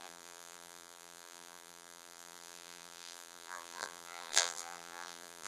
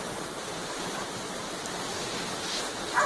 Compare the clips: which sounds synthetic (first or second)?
first